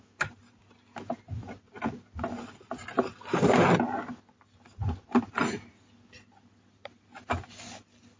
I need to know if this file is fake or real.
real